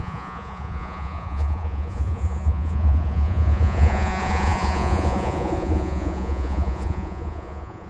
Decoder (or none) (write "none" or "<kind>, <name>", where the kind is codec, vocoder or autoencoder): vocoder, Vocos